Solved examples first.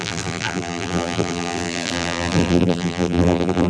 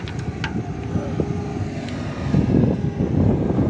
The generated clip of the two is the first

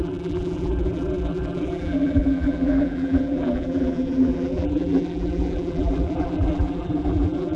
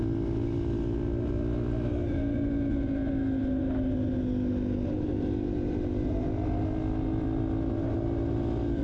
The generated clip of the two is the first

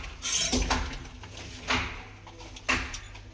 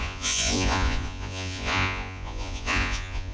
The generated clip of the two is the second